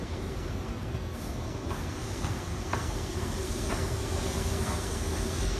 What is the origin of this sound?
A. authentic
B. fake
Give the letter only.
B